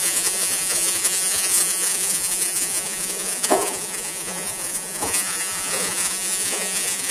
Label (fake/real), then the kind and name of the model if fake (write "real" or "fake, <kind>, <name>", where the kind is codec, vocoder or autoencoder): fake, vocoder, Vocos